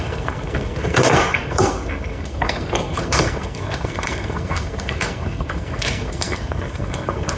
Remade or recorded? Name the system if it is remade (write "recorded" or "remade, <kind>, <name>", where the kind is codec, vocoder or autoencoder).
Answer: remade, codec, SNAC